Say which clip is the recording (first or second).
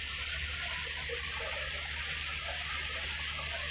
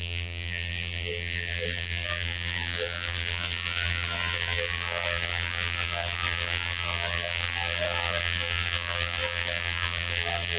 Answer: first